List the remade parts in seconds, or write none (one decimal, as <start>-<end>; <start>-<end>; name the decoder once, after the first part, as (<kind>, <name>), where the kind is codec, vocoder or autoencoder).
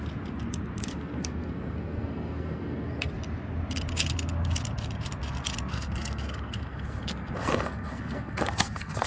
0.8-3.1 (codec, SNAC); 5.7-9.1